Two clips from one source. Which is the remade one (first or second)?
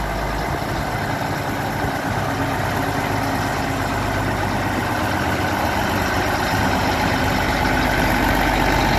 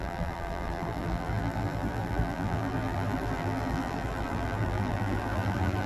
second